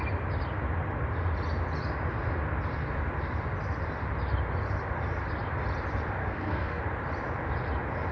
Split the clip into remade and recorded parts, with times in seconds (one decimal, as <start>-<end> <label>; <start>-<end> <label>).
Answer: 0.0-6.2 recorded; 6.2-6.8 remade; 6.8-8.1 recorded